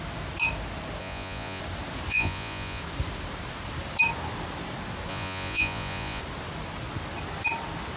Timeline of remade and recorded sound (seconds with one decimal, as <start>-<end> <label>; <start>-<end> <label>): 0.0-1.0 recorded; 1.0-1.6 remade; 1.6-2.1 recorded; 2.1-2.8 remade; 2.8-5.1 recorded; 5.1-6.2 remade; 6.2-8.0 recorded